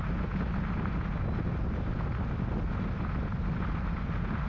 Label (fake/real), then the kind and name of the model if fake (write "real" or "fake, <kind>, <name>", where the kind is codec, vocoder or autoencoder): real